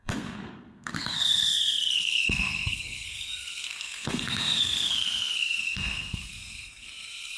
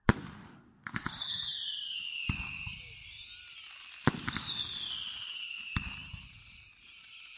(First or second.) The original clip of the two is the second